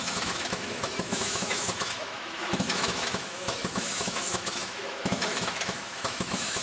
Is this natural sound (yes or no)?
no